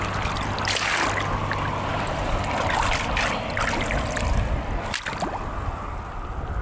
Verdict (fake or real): real